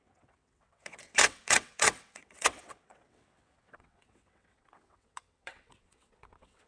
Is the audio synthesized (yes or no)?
yes